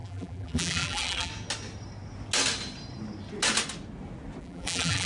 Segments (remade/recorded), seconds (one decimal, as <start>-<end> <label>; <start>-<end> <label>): 0.0-1.3 remade; 1.3-4.4 recorded; 4.4-5.1 remade